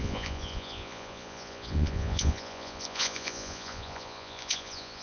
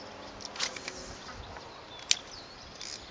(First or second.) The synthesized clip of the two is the first